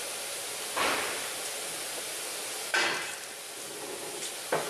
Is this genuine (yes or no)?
yes